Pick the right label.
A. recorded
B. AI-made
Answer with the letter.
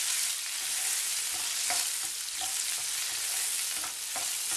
A